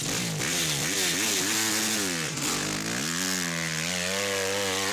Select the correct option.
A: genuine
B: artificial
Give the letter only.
A